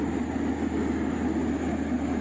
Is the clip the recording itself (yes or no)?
yes